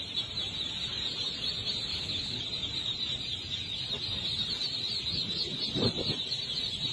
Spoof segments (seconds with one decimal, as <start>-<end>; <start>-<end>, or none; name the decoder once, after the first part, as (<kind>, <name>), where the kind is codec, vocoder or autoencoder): 1.9-2.4 (codec, HILCodec)